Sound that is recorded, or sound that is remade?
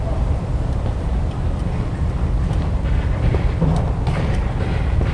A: recorded